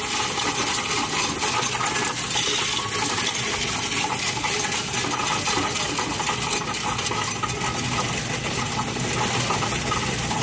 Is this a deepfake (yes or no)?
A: no